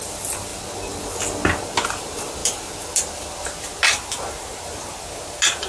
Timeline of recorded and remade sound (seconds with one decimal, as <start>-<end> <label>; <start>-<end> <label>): 0.0-5.7 recorded